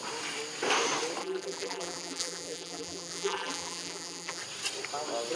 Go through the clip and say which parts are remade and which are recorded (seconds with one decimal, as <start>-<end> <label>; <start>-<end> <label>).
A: 0.0-1.2 recorded; 1.2-4.4 remade; 4.4-5.4 recorded